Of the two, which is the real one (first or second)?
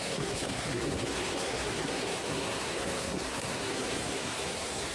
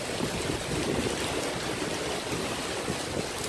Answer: second